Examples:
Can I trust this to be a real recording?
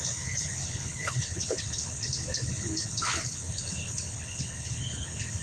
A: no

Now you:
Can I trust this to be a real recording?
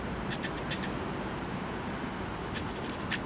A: yes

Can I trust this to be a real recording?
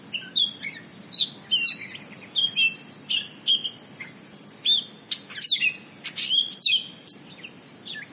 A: yes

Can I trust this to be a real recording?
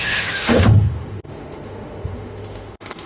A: no